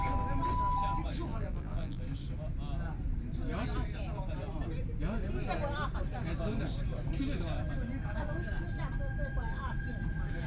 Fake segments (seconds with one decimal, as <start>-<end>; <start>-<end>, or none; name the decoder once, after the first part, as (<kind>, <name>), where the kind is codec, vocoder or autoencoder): 1.3-2.0 (vocoder, BigVGAN v2)